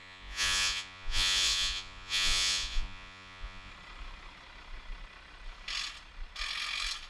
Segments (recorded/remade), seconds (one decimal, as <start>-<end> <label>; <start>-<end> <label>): 0.0-3.7 remade; 3.7-7.1 recorded